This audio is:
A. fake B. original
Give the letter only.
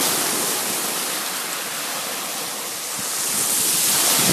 B